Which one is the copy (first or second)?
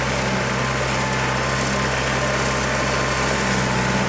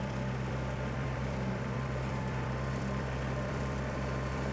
second